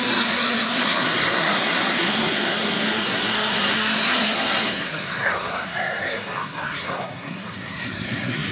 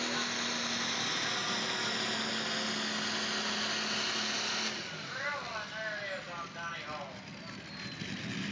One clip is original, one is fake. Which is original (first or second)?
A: second